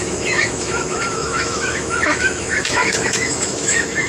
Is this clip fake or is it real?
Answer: fake